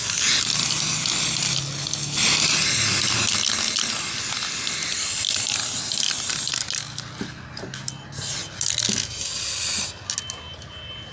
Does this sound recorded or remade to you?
recorded